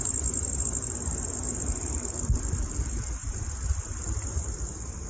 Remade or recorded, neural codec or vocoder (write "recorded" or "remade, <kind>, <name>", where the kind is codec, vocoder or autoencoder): recorded